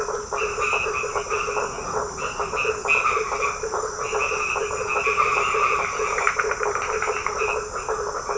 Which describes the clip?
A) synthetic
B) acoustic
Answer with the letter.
B